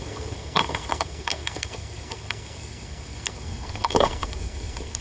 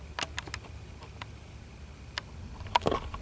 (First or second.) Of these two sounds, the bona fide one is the second